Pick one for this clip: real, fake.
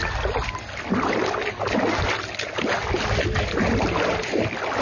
real